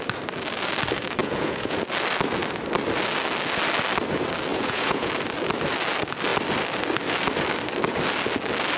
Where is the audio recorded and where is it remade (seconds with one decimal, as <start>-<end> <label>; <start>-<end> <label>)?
0.0-1.2 recorded; 1.2-1.8 remade; 1.8-4.5 recorded; 4.5-5.1 remade; 5.1-8.8 recorded